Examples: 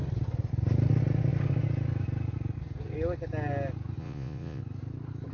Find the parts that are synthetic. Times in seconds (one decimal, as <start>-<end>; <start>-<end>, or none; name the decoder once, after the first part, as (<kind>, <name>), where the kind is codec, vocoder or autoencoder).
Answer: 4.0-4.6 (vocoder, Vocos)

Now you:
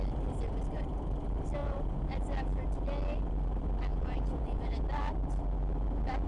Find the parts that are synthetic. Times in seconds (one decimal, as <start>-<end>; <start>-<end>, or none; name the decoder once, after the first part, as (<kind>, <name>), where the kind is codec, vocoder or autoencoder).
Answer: 1.6-2.1 (vocoder, Vocos); 3.9-4.8

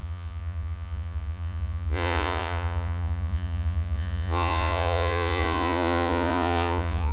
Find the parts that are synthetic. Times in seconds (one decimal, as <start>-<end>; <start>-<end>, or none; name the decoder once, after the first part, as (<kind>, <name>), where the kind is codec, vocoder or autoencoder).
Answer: 0.0-7.1 (vocoder, Vocos)

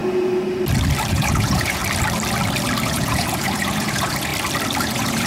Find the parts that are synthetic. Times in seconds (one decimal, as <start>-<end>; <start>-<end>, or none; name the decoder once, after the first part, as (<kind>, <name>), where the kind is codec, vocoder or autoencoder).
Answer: 1.1-1.8 (vocoder, Vocos); 2.8-4.3; 4.8-5.3

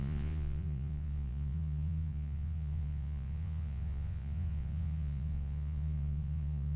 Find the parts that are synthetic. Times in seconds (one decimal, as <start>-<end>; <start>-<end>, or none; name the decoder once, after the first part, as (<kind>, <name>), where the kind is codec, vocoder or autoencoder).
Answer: 0.0-6.8 (vocoder, Vocos)

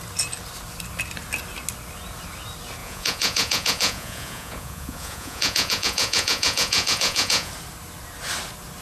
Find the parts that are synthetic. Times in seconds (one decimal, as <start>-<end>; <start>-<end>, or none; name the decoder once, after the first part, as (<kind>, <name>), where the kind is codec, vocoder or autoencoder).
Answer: 2.8-7.5 (vocoder, Vocos)